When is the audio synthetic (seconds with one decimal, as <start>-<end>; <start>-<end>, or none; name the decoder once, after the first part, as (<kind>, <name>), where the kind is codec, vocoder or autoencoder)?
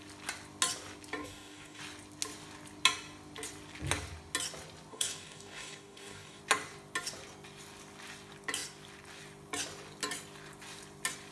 1.2-1.8 (codec, DAC); 4.9-6.4